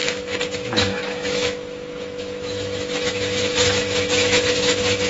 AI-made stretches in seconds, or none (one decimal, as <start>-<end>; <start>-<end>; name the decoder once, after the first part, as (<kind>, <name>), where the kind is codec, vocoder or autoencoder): 0.0-5.1 (autoencoder, DAC-VAE)